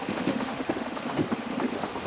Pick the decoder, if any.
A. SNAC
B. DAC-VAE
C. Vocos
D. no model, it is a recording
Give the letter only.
B